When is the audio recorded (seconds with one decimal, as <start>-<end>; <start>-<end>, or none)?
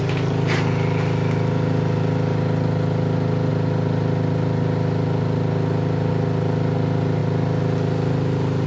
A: 0.0-8.7